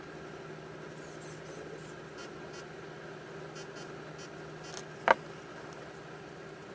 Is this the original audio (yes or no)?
yes